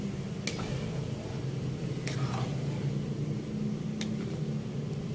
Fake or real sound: real